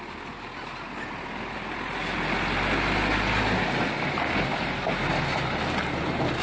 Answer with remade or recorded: recorded